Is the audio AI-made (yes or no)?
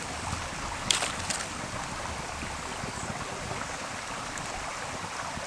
no